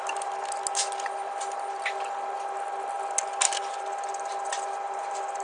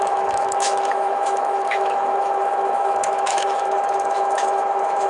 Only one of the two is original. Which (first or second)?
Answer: first